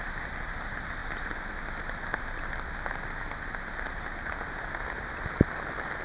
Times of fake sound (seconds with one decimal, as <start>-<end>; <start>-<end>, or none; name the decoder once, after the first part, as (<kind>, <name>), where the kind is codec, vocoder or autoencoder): none